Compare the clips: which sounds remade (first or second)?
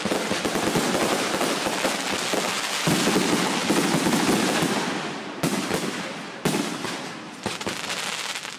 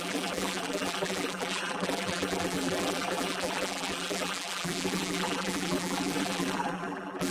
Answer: second